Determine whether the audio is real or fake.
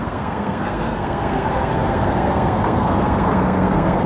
fake